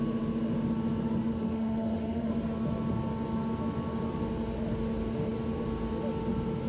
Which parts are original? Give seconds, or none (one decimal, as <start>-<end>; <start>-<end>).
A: 0.0-1.3; 2.3-6.7